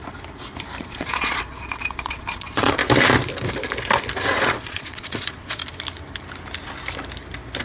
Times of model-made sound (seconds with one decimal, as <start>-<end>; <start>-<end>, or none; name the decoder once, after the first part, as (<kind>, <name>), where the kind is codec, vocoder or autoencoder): 0.8-2.8 (vocoder, Vocos); 4.4-5.6